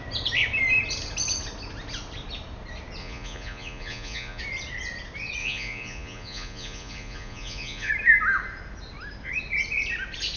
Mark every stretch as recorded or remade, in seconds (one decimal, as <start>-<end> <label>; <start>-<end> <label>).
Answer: 0.0-3.0 recorded; 3.0-4.4 remade; 4.4-5.4 recorded; 5.4-7.9 remade; 7.9-10.4 recorded